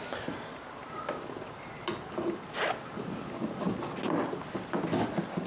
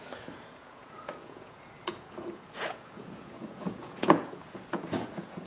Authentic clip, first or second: first